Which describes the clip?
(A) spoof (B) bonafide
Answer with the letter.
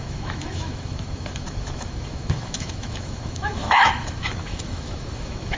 A